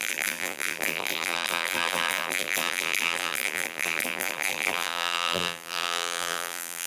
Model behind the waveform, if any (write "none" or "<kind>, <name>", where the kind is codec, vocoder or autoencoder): vocoder, BigVGAN v2